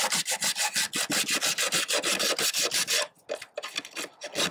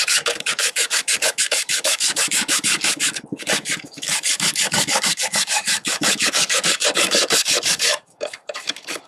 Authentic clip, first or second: first